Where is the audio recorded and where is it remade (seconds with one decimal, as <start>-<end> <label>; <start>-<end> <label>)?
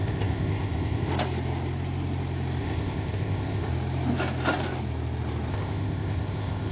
0.0-1.1 remade; 1.1-2.6 recorded; 2.6-3.7 remade; 3.7-5.5 recorded; 5.5-6.7 remade